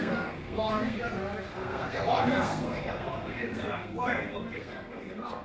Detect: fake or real fake